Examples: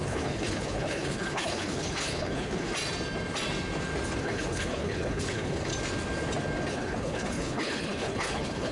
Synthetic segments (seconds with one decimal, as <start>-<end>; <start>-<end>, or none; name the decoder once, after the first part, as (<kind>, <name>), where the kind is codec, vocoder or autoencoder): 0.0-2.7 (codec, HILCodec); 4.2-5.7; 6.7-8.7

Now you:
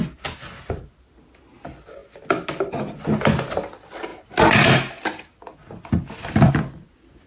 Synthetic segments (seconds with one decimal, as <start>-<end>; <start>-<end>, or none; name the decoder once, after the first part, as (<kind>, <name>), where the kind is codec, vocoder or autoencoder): none

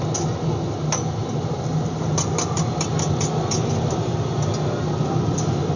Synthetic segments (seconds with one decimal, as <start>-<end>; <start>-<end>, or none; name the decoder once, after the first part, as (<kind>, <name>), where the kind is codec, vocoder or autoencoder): none